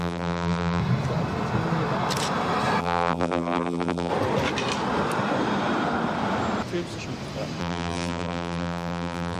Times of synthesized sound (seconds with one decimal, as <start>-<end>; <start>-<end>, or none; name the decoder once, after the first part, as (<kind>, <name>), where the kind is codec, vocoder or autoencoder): 0.0-0.8 (vocoder, BigVGAN v2); 2.8-4.1; 7.6-9.4